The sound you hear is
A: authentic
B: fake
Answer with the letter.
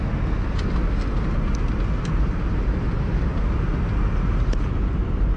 A